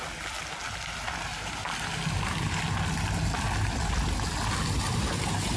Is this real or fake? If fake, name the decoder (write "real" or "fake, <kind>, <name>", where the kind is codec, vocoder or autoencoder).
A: real